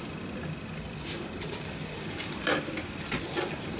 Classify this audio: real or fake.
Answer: real